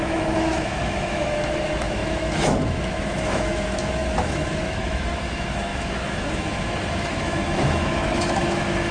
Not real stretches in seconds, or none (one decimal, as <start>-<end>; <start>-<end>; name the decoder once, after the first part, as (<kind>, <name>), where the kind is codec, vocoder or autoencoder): 0.0-8.9 (autoencoder, DAC-VAE)